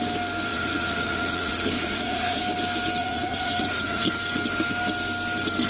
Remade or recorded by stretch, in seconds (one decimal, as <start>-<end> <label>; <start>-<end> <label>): 0.0-0.5 recorded; 0.5-2.4 remade; 2.4-3.0 recorded; 3.0-4.0 remade; 4.0-5.7 recorded